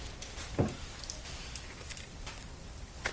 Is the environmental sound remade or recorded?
recorded